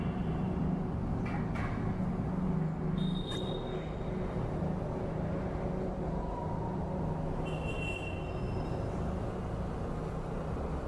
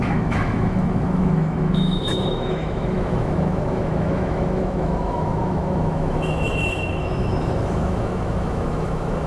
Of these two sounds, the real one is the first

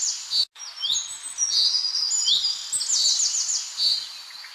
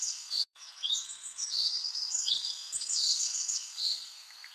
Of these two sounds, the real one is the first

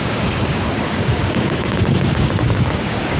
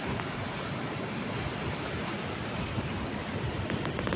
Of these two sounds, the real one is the second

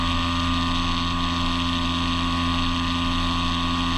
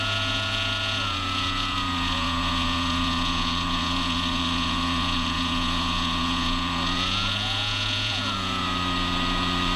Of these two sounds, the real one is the first